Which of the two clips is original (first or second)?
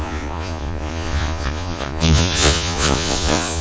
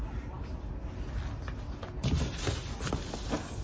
second